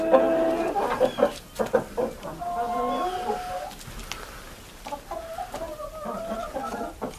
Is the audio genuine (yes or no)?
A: yes